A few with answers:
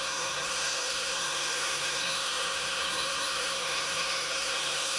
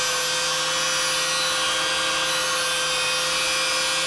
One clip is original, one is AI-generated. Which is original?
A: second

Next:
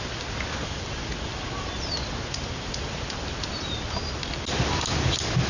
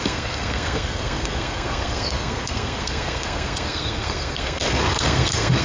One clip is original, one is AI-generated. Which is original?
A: first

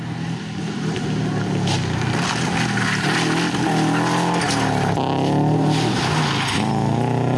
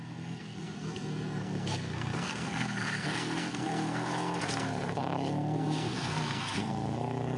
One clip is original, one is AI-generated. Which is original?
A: first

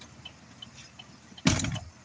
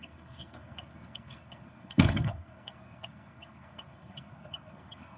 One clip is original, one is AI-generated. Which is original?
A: first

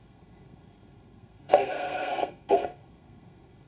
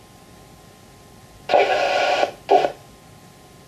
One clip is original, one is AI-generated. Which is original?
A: second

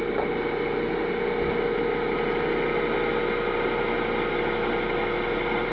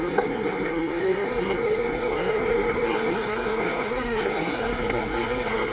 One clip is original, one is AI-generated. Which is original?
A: first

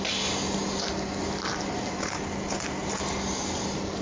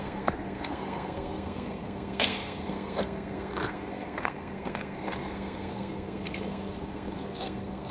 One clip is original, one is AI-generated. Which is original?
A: first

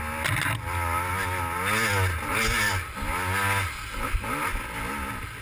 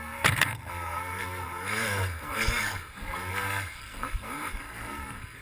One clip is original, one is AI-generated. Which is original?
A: first